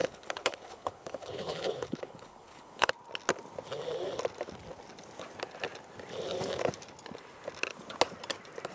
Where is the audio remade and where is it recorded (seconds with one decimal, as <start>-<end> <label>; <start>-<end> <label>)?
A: 0.0-2.9 remade; 2.9-8.7 recorded